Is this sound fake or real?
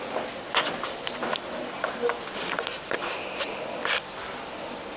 real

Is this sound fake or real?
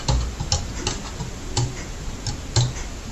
real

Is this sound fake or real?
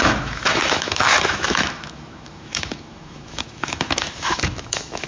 fake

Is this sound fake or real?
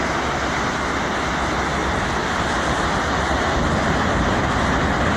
real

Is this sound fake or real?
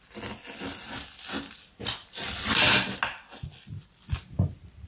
real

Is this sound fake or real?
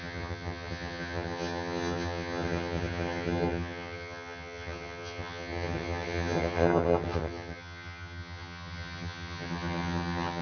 fake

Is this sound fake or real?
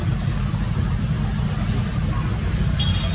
real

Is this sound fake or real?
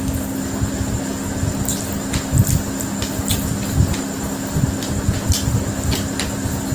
real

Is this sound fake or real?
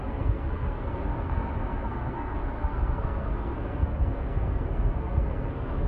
fake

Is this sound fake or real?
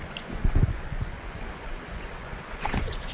fake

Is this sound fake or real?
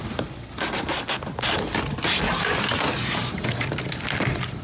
real